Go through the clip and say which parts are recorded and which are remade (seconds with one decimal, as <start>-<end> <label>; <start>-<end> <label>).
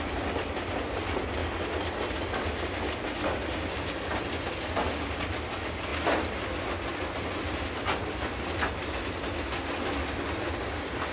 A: 0.0-11.1 recorded